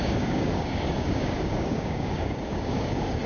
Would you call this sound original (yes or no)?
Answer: no